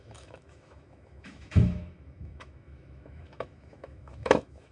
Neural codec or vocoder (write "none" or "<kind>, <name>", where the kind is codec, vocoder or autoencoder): autoencoder, DAC-VAE